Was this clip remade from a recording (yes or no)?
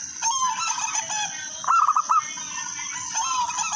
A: no